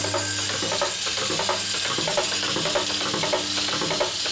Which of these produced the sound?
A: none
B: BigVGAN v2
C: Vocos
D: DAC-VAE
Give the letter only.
A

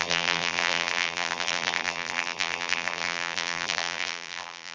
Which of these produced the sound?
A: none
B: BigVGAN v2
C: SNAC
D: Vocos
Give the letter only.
B